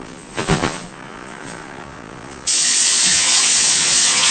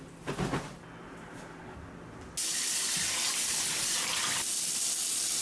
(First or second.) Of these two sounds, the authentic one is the second